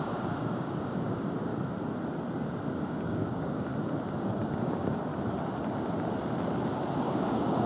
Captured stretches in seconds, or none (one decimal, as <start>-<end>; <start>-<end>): 1.5-2.8; 3.7-4.2; 5.1-7.0